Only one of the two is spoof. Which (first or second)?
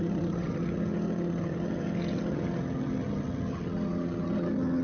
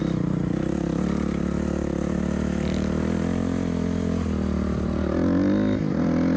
first